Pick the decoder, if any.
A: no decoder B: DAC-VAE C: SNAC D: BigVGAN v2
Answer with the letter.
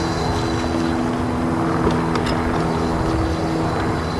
A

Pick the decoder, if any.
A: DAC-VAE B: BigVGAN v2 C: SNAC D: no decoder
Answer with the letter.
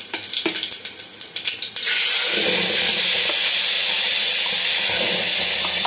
D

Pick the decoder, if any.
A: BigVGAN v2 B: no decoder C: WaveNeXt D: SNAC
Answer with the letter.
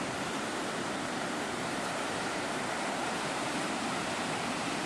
A